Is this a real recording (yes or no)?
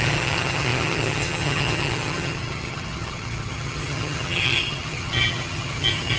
no